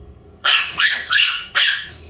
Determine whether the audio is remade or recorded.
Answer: remade